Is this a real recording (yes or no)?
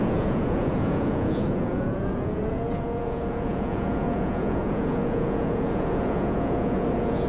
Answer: no